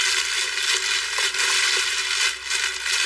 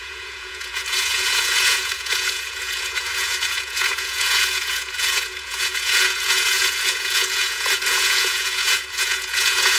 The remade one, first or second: second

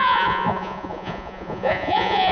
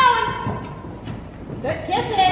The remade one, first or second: first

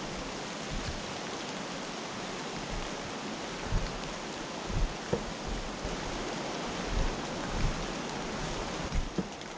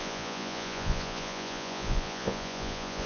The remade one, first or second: second